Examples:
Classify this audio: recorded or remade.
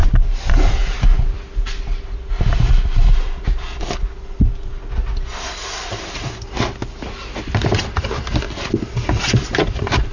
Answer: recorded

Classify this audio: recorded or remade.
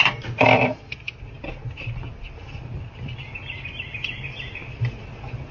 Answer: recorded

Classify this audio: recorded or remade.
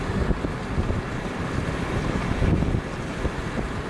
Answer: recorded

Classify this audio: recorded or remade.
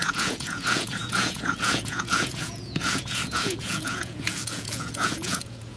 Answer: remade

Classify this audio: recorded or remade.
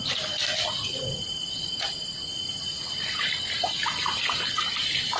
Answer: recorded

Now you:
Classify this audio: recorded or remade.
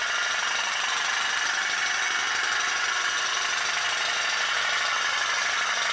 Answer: recorded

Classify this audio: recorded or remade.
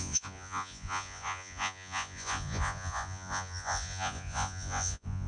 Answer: remade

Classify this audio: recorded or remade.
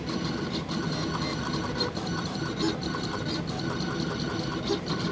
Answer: recorded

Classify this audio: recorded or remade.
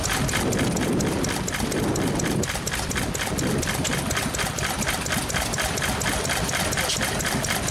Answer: recorded